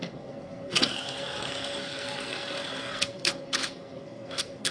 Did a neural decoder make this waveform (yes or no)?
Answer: yes